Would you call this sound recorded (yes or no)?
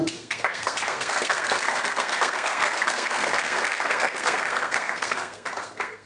no